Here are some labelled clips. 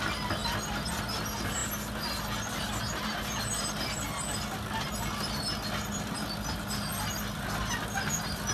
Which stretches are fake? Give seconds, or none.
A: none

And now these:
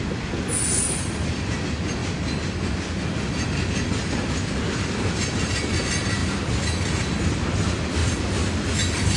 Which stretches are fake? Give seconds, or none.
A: none

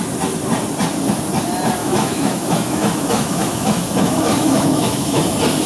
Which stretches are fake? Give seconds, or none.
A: 1.8-5.2 (autoencoder, DAC-VAE)

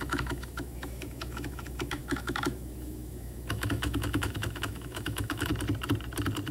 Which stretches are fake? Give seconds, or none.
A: 0.0-5.5 (autoencoder, DAC-VAE)